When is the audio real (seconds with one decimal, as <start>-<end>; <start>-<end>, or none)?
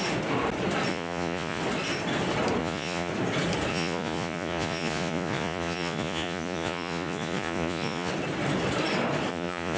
0.0-0.9; 1.6-2.6; 3.1-3.7; 8.1-9.3